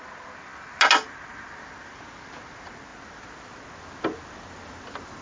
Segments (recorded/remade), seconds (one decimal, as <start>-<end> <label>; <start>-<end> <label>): 0.0-5.2 recorded